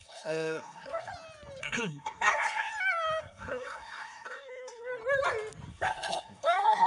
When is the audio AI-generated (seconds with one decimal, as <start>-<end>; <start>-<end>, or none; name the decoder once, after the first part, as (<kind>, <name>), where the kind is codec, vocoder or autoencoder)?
0.0-1.1 (codec, SNAC); 1.6-2.7; 3.2-4.9; 5.7-6.9